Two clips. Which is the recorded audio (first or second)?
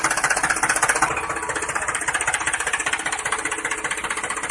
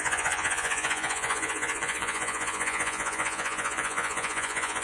first